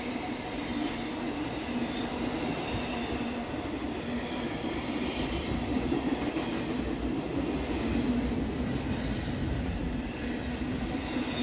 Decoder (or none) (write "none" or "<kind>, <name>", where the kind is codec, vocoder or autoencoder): none